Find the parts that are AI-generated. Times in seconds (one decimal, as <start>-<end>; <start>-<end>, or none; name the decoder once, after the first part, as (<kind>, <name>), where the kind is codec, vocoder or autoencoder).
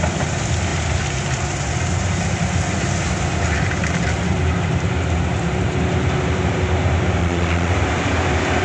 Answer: 7.2-7.7 (vocoder, Vocos)